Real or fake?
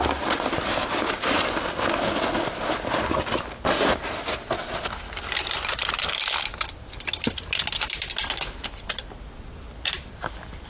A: real